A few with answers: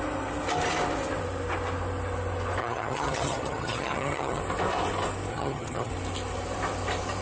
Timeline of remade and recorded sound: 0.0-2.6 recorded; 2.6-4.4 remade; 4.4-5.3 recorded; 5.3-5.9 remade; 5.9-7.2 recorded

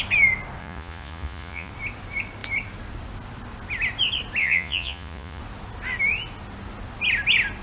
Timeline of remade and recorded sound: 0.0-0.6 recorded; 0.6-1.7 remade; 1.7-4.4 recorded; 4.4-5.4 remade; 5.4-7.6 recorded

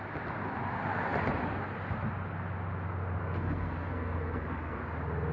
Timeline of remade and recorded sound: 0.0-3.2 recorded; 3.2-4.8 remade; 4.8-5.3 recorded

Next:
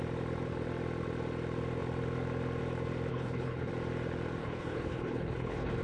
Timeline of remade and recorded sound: 0.0-3.1 recorded; 3.1-3.7 remade; 3.7-4.4 recorded; 4.4-5.8 remade